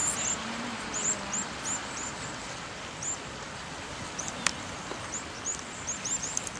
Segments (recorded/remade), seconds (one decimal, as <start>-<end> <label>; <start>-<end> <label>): 0.0-6.6 recorded